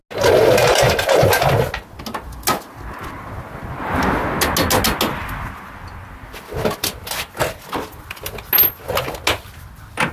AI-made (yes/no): no